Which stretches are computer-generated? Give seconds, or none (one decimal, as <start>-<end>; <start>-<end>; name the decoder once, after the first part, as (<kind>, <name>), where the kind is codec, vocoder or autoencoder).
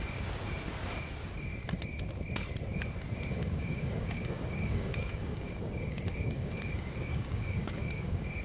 3.4-8.4 (codec, DAC)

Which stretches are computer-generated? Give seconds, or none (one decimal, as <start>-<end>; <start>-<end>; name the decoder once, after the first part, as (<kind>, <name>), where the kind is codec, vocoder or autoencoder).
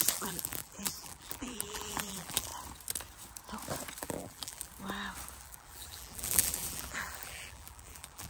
0.0-2.5 (vocoder, BigVGAN v2); 4.0-4.7; 5.4-8.3